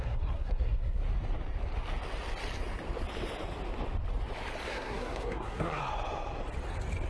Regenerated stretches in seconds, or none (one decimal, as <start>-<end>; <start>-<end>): 0.0-1.0; 4.7-5.8